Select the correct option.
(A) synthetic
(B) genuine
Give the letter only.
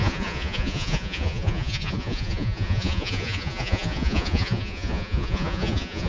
A